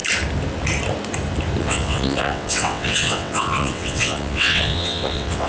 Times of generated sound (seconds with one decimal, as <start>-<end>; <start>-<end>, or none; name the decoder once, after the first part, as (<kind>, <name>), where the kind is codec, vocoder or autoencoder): 1.6-5.5 (vocoder, WaveNeXt)